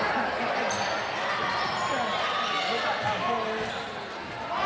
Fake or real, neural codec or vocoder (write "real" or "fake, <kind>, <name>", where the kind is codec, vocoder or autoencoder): real